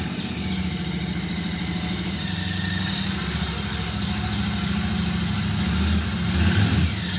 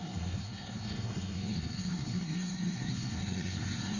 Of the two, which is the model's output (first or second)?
second